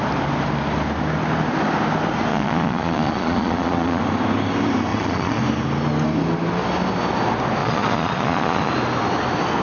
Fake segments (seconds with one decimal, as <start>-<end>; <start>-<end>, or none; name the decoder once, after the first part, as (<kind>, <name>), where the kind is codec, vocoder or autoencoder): 2.3-4.0 (vocoder, Vocos); 4.9-5.4; 7.6-8.7